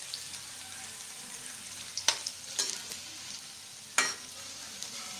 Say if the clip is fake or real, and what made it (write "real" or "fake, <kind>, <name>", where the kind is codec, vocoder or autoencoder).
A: real